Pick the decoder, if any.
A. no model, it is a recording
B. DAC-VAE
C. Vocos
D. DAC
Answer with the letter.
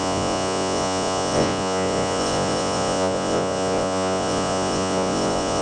C